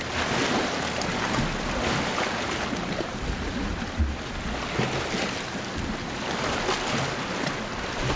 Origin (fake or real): real